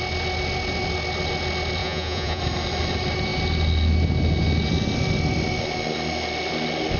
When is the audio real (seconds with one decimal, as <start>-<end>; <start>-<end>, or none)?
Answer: 0.0-1.8; 2.4-7.0